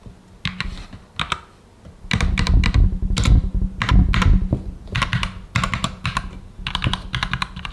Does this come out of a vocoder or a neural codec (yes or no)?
no